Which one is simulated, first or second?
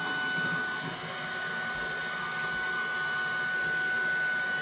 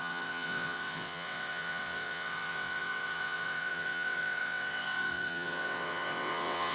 second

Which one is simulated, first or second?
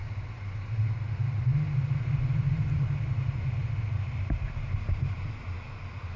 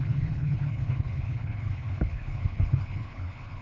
second